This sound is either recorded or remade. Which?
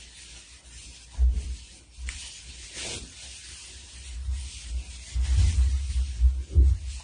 recorded